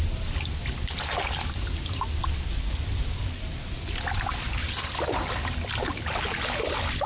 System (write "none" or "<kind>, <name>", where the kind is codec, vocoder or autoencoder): none